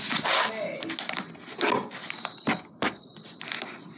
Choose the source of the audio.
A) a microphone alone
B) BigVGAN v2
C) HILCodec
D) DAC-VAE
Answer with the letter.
A